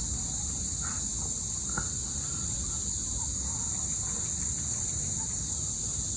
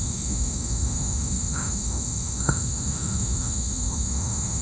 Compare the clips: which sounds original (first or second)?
first